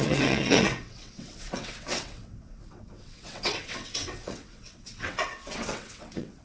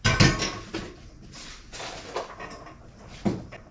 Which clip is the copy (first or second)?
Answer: first